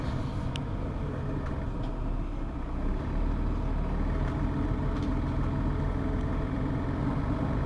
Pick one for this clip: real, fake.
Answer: real